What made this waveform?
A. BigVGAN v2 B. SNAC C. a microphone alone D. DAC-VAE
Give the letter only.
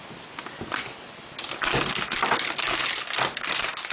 C